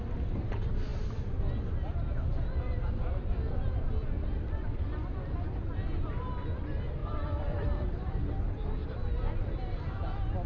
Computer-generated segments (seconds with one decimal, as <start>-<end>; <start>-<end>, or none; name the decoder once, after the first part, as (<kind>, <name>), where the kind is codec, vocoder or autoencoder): 7.0-8.3 (vocoder, BigVGAN v2); 8.8-10.5